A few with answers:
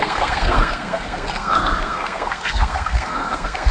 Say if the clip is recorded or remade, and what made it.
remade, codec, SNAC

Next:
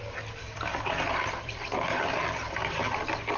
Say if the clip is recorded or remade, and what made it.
remade, vocoder, BigVGAN v2